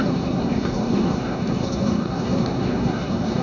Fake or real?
fake